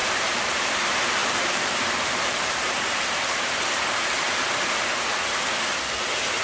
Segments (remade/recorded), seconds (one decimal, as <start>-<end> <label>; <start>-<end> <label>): 0.0-0.7 remade; 0.7-1.2 recorded; 1.2-5.0 remade; 5.0-6.4 recorded